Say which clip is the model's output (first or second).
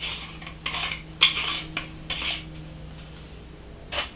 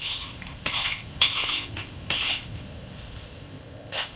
second